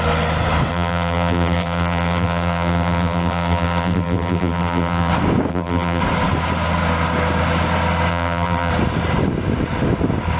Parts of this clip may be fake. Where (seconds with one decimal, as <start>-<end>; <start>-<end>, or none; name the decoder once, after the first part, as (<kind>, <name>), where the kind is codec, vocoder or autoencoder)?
0.7-5.1 (vocoder, BigVGAN v2); 5.5-6.0; 8.1-8.7

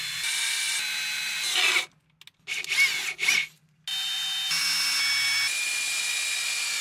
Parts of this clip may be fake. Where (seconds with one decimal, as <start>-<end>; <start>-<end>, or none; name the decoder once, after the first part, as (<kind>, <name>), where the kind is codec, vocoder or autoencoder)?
none

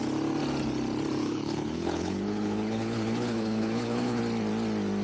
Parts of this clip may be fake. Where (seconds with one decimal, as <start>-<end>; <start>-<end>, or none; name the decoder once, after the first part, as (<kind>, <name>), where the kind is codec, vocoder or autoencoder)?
1.2-4.2 (codec, HILCodec)